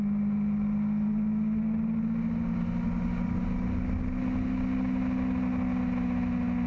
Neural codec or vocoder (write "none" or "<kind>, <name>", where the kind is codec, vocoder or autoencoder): none